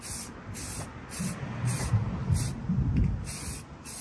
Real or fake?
real